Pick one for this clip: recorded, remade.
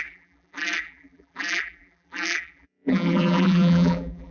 remade